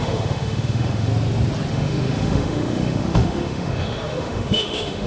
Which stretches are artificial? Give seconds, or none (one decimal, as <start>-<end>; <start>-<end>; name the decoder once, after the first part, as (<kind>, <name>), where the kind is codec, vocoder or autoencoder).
0.0-1.1 (autoencoder, DAC-VAE); 1.7-5.1